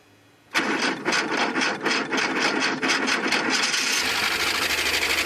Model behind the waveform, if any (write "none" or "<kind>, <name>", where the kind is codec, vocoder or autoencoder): none